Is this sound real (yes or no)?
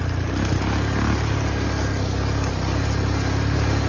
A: yes